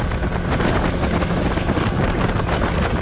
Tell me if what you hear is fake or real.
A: real